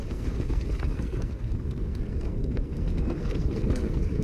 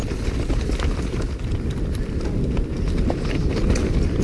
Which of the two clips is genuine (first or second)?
second